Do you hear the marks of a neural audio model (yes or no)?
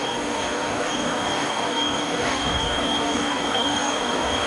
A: yes